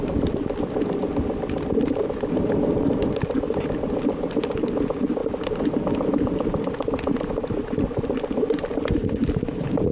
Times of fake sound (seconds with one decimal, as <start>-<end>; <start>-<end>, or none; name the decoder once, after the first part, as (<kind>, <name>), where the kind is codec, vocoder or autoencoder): 0.0-5.2 (vocoder, BigVGAN v2); 7.3-9.9